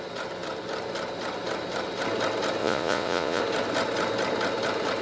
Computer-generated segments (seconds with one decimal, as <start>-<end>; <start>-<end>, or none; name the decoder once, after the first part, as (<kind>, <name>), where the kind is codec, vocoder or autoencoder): 2.6-3.4 (vocoder, Vocos)